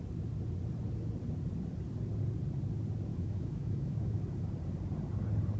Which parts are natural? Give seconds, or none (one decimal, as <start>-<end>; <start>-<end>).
0.0-3.1; 4.2-5.6